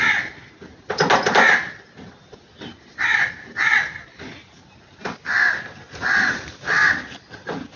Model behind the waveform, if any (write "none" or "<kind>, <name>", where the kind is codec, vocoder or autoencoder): none